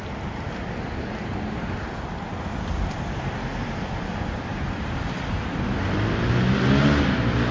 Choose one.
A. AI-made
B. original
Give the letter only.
B